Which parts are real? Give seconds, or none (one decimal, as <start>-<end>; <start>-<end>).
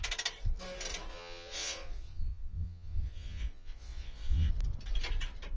0.0-1.1; 4.5-5.6